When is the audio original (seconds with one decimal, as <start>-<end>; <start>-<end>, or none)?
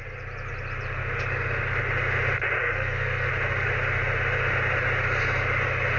0.0-2.6; 3.3-6.0